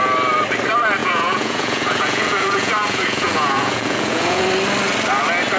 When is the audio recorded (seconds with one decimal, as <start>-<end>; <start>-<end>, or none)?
0.0-1.0; 4.4-5.6